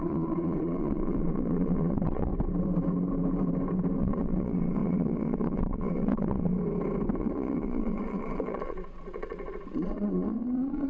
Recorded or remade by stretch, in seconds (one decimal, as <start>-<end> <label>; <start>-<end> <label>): 0.0-2.3 remade; 2.3-4.0 recorded; 4.0-6.5 remade; 6.5-7.2 recorded; 7.2-10.9 remade